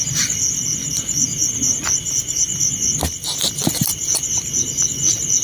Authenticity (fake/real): real